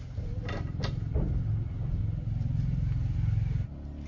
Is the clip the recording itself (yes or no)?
yes